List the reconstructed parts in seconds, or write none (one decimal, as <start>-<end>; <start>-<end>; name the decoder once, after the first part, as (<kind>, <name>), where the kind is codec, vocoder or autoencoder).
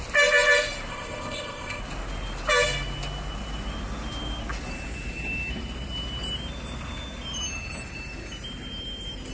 0.9-1.8 (codec, ZipCodec)